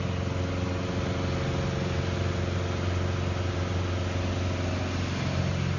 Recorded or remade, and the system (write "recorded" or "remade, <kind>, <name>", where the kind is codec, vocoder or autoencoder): recorded